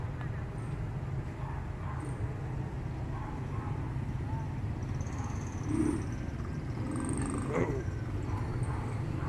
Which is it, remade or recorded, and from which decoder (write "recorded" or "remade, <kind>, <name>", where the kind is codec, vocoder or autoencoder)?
recorded